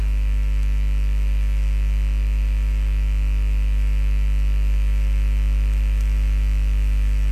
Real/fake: fake